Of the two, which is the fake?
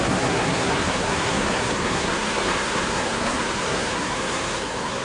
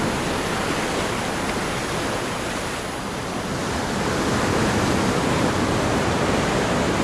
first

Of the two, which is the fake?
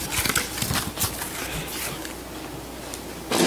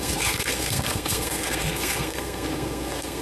second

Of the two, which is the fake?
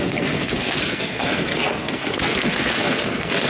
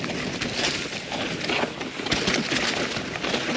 first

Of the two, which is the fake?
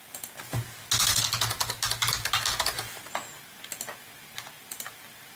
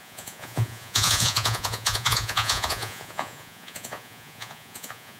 second